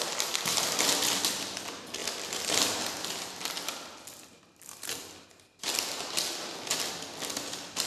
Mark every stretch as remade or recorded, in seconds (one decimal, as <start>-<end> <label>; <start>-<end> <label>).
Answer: 0.0-7.9 recorded